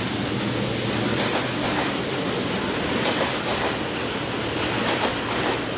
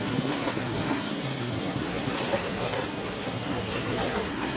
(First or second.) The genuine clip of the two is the first